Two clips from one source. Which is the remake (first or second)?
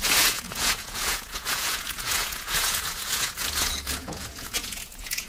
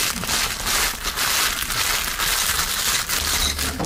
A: first